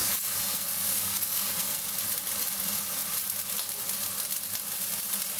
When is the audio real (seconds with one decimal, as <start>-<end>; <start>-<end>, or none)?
1.8-5.4